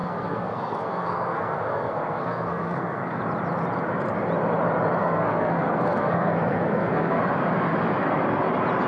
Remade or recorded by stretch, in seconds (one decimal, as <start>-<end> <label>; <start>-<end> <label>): 0.0-3.2 remade; 3.2-5.0 recorded; 5.0-7.2 remade; 7.2-8.9 recorded